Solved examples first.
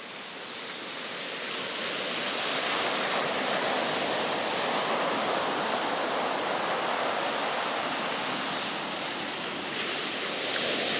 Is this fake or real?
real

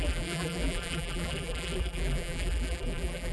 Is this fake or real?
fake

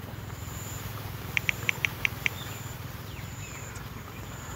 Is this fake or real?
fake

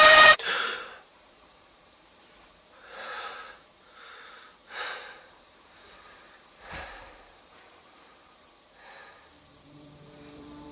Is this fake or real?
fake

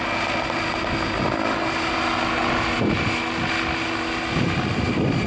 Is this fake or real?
real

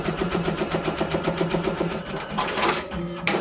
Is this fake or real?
fake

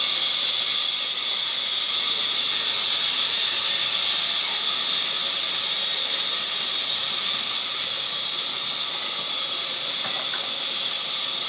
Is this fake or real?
real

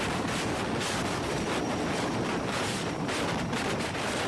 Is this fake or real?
fake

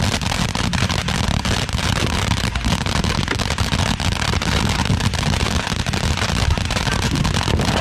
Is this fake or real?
real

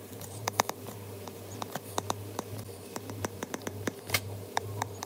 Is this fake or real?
fake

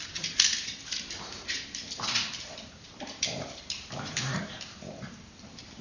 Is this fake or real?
fake